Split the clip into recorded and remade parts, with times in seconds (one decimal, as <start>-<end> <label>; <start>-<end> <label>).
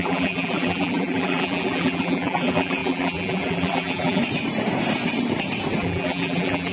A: 0.0-4.2 remade; 4.2-5.8 recorded; 5.8-6.7 remade